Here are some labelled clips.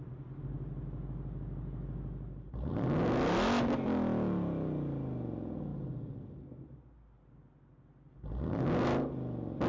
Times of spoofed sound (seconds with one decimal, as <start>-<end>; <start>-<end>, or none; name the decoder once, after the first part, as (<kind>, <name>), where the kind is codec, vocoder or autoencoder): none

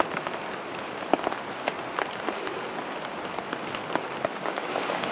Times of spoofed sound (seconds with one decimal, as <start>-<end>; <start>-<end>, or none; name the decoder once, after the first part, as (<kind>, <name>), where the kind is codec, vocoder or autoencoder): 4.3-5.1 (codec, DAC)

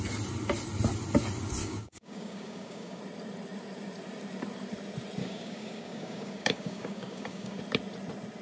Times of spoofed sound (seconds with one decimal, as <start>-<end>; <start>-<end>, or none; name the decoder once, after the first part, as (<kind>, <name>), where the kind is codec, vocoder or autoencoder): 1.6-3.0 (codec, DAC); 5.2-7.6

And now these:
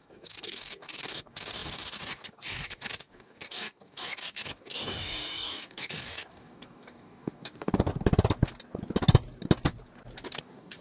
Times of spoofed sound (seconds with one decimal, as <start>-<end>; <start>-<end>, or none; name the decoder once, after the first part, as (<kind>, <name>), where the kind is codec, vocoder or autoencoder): 0.0-7.9 (codec, DAC); 10.4-10.8

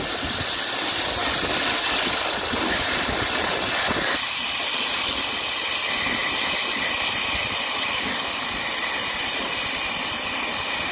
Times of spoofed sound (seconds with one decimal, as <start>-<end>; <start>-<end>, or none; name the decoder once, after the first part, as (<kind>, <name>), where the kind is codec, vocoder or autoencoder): none

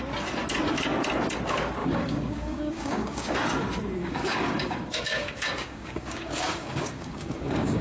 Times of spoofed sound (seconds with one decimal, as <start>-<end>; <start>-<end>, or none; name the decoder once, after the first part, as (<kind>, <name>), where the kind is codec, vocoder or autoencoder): 1.8-3.3 (codec, DAC); 4.0-7.8